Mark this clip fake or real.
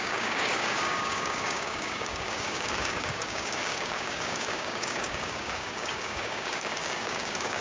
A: fake